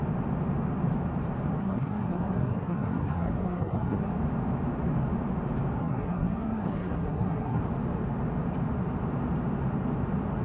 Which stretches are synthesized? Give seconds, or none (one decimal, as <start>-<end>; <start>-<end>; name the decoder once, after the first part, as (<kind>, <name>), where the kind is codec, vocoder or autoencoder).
1.6-4.1 (codec, SNAC); 5.8-7.6